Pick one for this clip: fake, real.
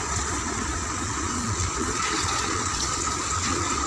fake